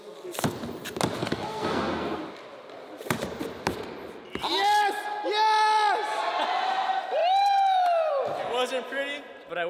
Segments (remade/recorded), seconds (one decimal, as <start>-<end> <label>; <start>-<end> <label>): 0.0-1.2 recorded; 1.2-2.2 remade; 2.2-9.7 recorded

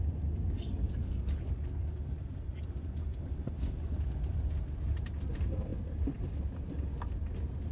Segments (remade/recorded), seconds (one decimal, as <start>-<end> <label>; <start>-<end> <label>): 0.0-7.7 recorded

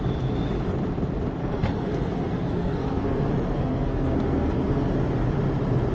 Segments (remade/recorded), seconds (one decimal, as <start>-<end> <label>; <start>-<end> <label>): 0.0-1.4 recorded; 1.4-4.9 remade; 4.9-5.9 recorded

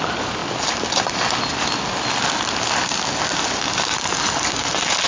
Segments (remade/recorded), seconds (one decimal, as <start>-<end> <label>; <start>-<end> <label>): 0.0-5.1 recorded

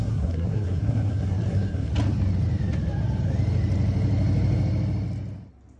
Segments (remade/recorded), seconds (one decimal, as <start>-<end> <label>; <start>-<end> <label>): 0.0-1.9 remade; 1.9-5.8 recorded

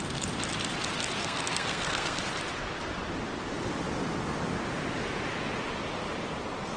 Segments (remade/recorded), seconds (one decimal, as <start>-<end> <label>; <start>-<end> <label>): 0.0-1.2 recorded; 1.2-2.2 remade; 2.2-6.8 recorded

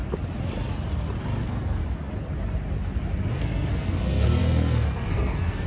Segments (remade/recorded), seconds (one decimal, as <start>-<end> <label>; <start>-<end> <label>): 0.0-1.4 recorded; 1.4-1.8 remade; 1.8-3.3 recorded; 3.3-5.7 remade